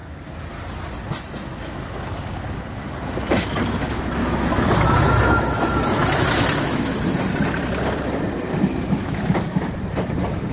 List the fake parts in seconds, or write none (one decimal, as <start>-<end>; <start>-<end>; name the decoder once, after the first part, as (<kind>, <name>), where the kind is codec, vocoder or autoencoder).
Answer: 4.2-7.2 (autoencoder, DAC-VAE); 8.7-9.8